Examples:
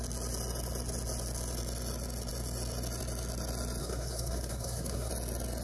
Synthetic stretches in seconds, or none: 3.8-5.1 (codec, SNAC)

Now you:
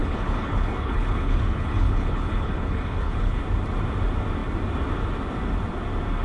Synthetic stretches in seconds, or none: 0.0-3.4 (codec, HILCodec)

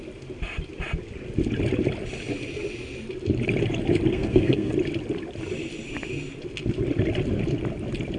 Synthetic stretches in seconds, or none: 4.1-4.7 (codec, SNAC)

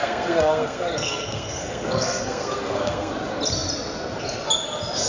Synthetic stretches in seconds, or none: 0.0-3.1 (codec, SNAC)

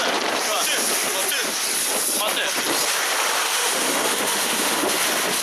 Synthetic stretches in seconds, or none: 3.4-5.0 (autoencoder, DAC-VAE)

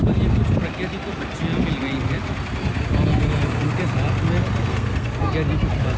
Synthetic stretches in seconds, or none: 4.7-5.3 (codec, SNAC)

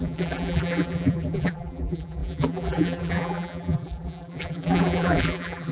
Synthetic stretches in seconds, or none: 0.0-5.7 (vocoder, BigVGAN v2)